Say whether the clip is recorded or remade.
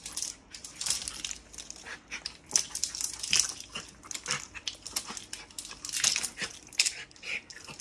recorded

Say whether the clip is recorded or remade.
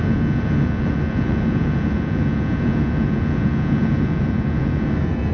remade